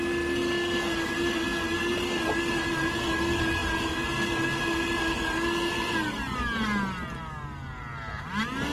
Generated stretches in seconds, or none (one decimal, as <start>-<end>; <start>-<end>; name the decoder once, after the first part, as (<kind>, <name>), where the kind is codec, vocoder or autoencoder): none